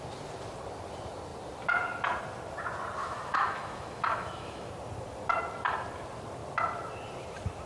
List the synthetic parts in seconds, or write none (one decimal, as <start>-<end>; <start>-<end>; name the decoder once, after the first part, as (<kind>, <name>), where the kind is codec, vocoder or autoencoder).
3.0-4.7 (autoencoder, DAC-VAE)